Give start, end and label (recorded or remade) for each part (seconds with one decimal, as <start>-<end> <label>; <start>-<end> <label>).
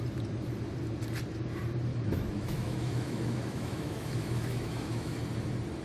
0.0-1.9 recorded; 1.9-5.2 remade; 5.2-5.8 recorded